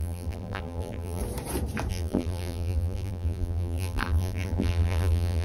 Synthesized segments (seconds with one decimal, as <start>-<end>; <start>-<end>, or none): 0.0-1.2; 1.9-5.4